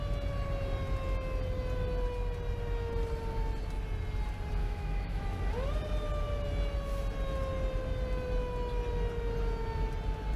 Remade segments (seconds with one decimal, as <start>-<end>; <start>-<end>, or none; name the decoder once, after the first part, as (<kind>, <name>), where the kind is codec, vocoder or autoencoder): 4.6-5.4 (autoencoder, DAC-VAE)